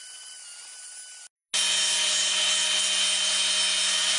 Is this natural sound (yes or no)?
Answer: yes